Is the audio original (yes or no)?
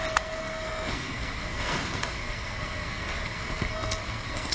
no